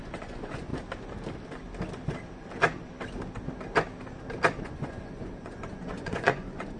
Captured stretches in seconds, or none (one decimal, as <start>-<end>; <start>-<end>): 0.7-4.6